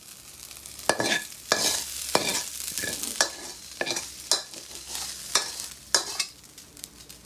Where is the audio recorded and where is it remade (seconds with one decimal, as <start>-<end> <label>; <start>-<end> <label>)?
0.0-7.3 recorded